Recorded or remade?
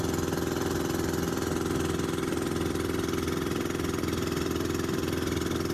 recorded